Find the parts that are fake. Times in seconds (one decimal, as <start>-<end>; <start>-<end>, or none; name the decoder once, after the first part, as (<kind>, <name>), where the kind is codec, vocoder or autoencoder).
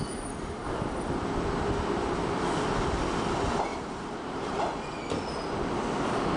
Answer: 3.7-4.7 (vocoder, BigVGAN v2)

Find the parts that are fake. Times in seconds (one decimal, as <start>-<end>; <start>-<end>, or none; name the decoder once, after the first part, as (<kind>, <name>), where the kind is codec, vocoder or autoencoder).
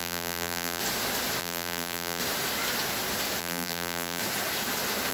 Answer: 0.0-0.8 (vocoder, BigVGAN v2); 1.4-2.2; 3.4-4.2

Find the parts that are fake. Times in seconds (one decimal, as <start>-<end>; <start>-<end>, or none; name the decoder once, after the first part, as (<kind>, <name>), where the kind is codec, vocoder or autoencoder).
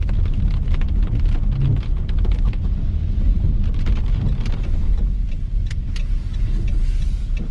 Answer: none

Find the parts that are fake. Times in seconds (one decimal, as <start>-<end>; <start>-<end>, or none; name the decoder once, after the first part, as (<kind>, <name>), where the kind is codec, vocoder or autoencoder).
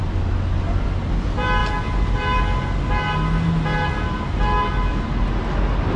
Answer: none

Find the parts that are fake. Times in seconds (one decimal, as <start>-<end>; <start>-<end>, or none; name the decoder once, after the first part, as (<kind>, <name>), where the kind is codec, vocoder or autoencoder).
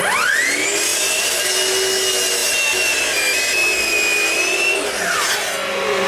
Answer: 0.9-1.4 (vocoder, BigVGAN v2)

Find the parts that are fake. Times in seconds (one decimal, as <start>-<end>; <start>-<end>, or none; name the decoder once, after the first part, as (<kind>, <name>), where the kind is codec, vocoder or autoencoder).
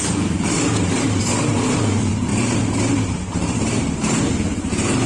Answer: 0.0-5.1 (vocoder, BigVGAN v2)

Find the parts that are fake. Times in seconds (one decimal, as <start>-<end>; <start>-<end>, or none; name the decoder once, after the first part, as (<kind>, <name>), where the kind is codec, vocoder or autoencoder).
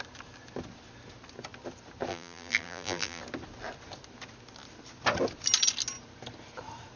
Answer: 2.1-3.2 (vocoder, BigVGAN v2)